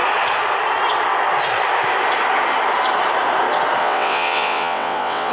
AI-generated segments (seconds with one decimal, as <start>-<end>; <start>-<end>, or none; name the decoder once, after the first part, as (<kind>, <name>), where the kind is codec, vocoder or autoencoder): 3.8-5.3 (vocoder, WaveNeXt)